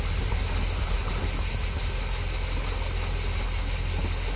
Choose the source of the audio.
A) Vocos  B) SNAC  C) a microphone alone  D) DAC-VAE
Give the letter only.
C